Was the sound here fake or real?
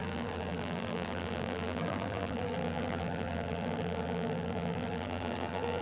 fake